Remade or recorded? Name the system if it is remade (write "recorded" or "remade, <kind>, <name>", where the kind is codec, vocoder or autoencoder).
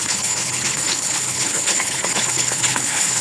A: remade, codec, HILCodec